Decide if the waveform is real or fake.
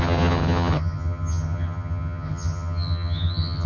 fake